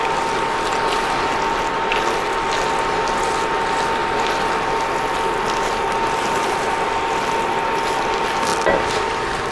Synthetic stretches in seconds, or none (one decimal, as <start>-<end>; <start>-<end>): none